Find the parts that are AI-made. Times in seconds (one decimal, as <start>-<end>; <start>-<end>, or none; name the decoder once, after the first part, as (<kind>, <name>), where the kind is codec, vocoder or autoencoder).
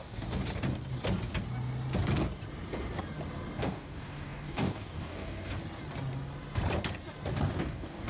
0.0-0.4 (codec, DAC); 3.6-5.6; 7.6-8.1